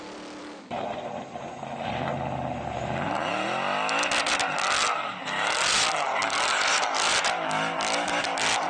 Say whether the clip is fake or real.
real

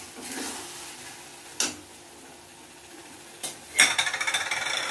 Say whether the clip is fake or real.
real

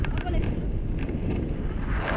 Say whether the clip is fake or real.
real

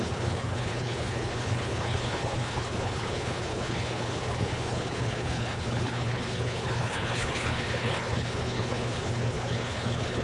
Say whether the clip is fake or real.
fake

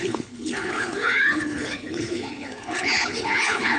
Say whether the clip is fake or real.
fake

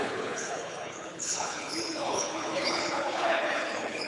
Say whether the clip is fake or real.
fake